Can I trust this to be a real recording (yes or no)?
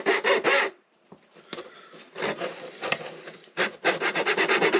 yes